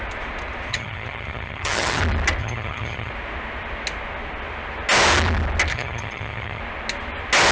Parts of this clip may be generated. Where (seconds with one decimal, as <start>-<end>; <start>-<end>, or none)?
0.7-2.0; 2.4-3.1; 5.7-6.6